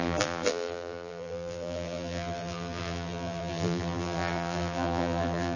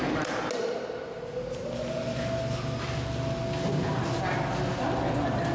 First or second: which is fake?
first